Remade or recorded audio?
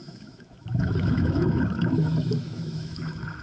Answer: remade